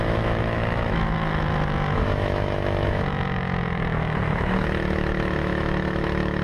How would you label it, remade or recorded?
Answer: remade